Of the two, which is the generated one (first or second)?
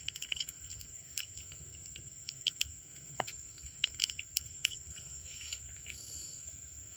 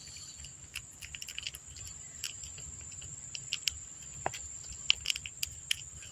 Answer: first